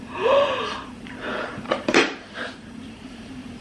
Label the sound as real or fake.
fake